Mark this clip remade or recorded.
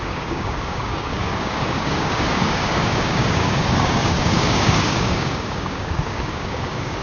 remade